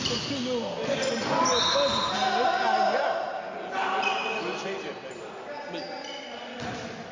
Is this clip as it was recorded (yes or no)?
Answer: yes